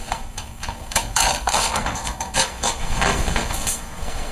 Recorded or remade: remade